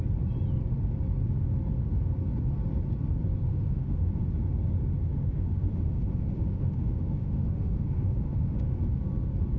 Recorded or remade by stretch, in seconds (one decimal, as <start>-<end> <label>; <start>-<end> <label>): 0.0-3.5 recorded; 3.5-4.1 remade; 4.1-5.1 recorded; 5.1-8.8 remade; 8.8-9.6 recorded